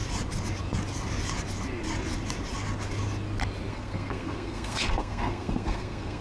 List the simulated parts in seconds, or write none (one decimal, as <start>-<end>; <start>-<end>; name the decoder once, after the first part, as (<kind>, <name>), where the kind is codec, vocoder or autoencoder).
3.7-6.2 (codec, SNAC)